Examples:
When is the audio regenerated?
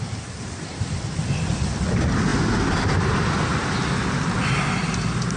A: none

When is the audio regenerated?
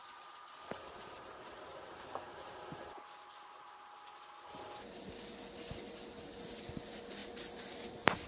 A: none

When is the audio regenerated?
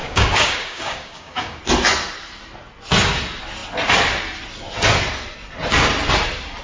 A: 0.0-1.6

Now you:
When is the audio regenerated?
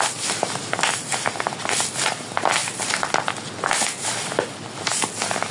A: none